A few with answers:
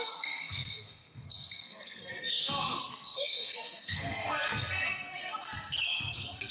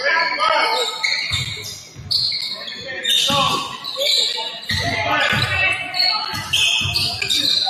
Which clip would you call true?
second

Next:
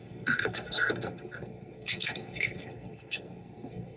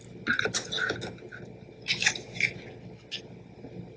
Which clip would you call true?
second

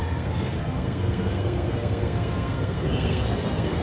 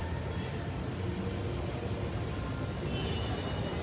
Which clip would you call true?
second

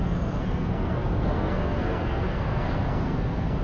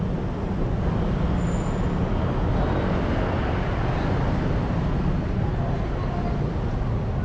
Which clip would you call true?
second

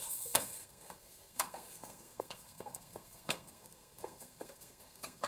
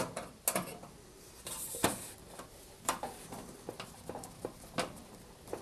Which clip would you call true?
second